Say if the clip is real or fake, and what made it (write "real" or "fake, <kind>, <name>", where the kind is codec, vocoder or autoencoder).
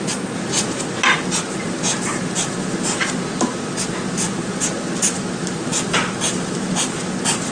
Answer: real